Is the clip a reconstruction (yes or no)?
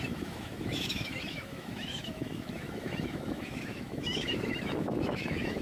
yes